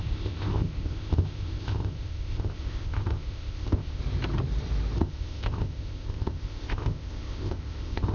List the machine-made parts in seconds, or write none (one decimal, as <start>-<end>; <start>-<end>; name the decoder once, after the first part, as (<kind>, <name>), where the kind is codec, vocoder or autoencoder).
0.0-4.0 (codec, ZipCodec); 5.0-8.1